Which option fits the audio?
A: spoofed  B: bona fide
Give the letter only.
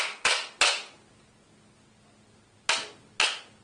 B